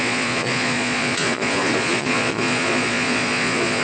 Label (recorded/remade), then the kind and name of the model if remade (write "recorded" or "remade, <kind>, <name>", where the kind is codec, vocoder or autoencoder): remade, vocoder, Vocos